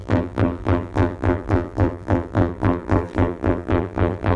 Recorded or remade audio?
remade